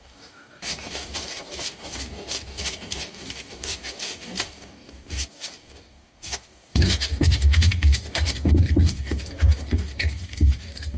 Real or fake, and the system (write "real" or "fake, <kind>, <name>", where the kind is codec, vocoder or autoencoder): fake, codec, DAC